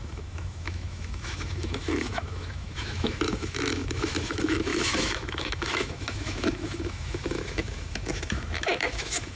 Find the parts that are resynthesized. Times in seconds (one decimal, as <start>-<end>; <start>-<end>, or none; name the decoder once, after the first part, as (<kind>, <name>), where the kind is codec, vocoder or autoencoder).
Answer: 0.0-9.4 (autoencoder, DAC-VAE)